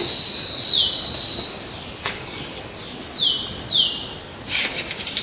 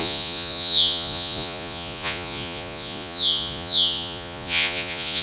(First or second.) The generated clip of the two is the second